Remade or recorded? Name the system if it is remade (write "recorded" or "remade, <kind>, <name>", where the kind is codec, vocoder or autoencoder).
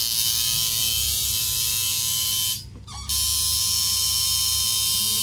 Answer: remade, vocoder, BigVGAN v2